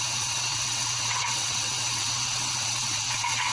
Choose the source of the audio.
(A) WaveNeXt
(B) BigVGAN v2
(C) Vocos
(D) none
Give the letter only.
A